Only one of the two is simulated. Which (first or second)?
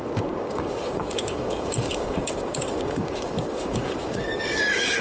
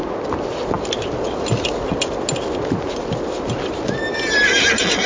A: first